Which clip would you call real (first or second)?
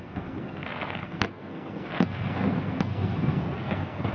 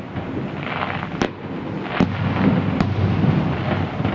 second